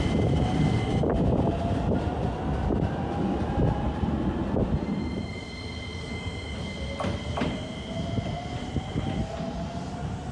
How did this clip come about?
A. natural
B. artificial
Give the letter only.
A